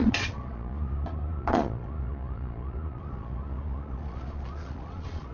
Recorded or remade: remade